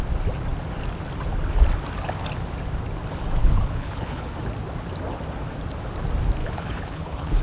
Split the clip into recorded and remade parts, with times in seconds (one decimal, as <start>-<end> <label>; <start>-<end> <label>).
0.0-3.4 recorded; 3.4-4.4 remade; 4.4-6.4 recorded; 6.4-7.4 remade